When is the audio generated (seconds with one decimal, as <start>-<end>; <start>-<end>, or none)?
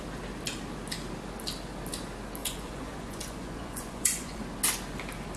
2.4-4.4